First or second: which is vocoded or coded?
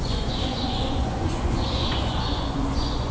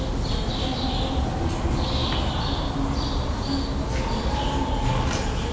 first